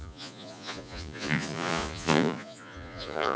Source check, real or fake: fake